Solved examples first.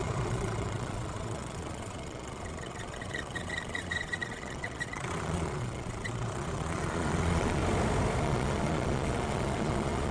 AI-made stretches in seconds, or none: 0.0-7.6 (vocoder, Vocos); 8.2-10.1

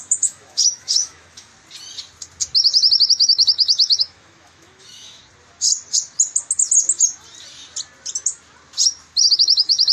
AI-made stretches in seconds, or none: 0.0-1.5 (autoencoder, DAC-VAE); 3.1-5.2; 9.3-9.9

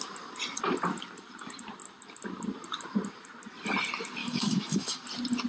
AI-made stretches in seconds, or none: 4.2-5.0 (autoencoder, DAC-VAE)

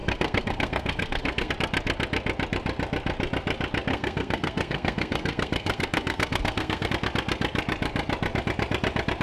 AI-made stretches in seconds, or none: 0.0-1.5 (codec, SNAC); 3.9-6.9

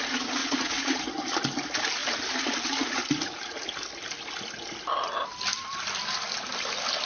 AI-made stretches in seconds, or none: 0.4-1.0 (vocoder, Vocos)